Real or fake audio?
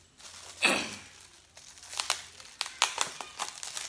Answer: real